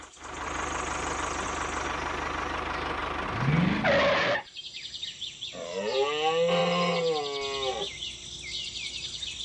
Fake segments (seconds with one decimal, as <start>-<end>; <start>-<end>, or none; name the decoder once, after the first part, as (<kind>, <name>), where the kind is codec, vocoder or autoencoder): none